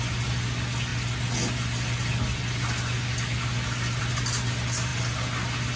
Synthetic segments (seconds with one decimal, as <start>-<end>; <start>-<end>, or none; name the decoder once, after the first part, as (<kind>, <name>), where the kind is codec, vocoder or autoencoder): none